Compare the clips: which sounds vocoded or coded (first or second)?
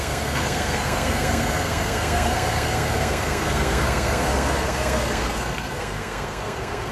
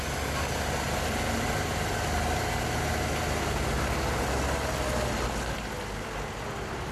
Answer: first